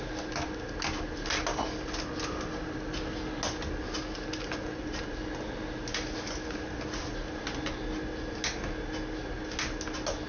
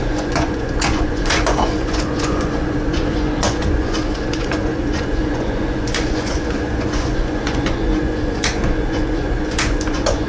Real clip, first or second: first